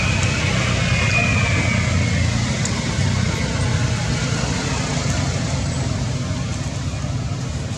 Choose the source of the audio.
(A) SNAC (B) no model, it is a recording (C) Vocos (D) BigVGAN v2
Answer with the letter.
B